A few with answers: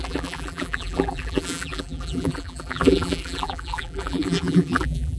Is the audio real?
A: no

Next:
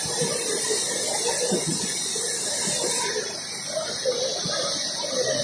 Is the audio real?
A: yes